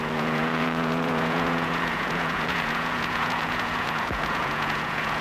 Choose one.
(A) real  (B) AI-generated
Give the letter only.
B